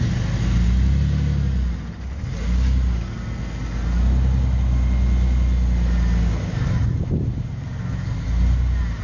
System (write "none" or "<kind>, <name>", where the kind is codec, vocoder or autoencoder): none